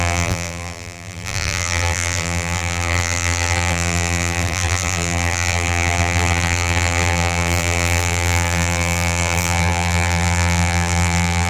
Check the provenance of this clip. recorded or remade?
remade